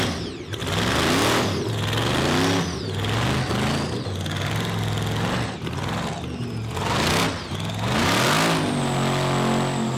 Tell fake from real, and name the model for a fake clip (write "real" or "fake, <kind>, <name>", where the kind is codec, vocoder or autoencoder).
real